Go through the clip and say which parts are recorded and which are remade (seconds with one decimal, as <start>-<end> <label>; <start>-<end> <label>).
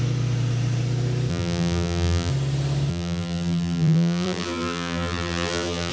0.0-1.3 recorded; 1.3-2.3 remade; 2.3-2.9 recorded; 2.9-5.9 remade